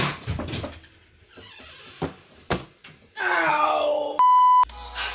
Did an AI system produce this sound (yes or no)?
no